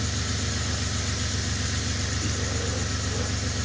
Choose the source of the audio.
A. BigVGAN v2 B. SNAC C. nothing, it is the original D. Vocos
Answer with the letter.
C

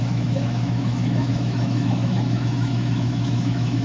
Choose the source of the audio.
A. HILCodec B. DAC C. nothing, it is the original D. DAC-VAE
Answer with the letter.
D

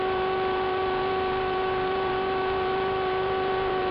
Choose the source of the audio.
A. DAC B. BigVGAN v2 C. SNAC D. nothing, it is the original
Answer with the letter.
B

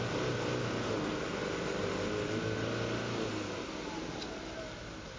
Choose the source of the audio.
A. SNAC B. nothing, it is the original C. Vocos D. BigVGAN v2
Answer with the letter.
B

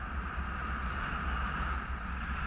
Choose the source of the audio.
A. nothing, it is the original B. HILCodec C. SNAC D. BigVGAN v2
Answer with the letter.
A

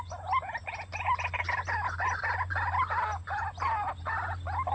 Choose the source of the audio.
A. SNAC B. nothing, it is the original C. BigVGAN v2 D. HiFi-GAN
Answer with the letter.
B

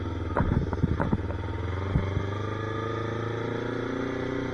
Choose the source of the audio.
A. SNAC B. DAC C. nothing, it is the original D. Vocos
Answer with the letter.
C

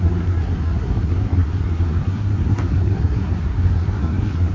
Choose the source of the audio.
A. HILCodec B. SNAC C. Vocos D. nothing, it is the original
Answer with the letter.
B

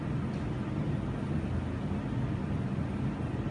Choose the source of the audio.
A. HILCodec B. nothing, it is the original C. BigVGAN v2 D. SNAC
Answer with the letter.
B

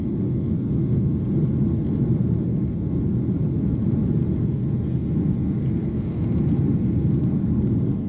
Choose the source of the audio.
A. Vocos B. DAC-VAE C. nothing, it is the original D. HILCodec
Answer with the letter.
C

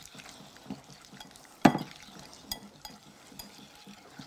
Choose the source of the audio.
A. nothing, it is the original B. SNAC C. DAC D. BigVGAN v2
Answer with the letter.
A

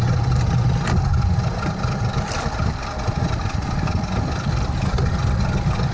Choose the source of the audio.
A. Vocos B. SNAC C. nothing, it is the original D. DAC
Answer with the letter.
C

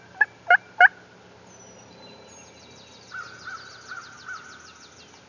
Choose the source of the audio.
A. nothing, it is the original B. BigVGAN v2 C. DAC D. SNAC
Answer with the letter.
A